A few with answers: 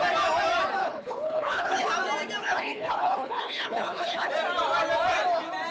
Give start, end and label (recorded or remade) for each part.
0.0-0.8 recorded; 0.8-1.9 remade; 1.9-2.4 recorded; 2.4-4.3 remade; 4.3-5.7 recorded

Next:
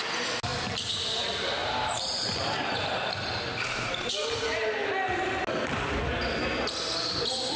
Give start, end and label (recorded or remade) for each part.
0.0-1.6 recorded; 1.6-2.9 remade; 2.9-7.6 recorded